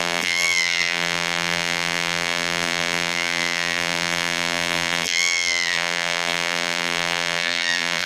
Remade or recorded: remade